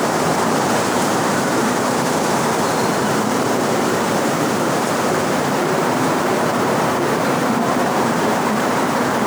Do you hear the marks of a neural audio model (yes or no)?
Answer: yes